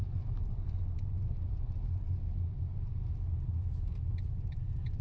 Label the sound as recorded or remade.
recorded